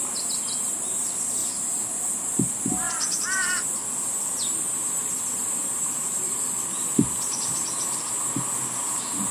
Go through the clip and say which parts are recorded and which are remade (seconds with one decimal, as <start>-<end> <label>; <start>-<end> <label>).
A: 0.0-5.0 recorded; 5.0-7.8 remade; 7.8-9.3 recorded